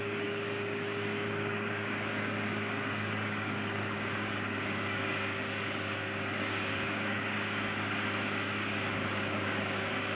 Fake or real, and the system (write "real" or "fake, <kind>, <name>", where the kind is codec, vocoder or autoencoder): fake, codec, DAC